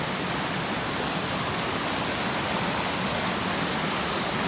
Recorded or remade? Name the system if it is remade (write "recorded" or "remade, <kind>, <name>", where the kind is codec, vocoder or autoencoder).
recorded